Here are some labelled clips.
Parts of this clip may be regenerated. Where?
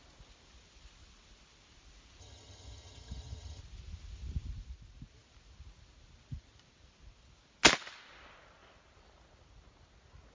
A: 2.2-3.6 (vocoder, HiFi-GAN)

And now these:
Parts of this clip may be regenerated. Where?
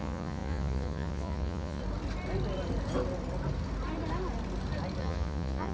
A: 0.0-1.8 (vocoder, Vocos); 5.0-5.7